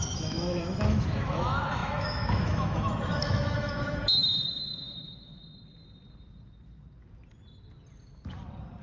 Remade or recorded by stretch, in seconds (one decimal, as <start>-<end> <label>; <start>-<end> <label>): 0.0-5.4 remade; 5.4-8.8 recorded